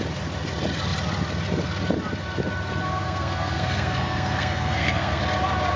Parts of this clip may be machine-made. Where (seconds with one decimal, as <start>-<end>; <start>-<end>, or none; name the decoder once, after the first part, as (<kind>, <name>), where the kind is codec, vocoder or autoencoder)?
2.8-5.2 (codec, SNAC)